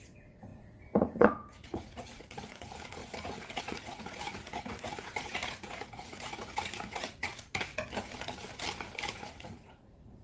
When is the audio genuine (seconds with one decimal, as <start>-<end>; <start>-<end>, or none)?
7.7-9.1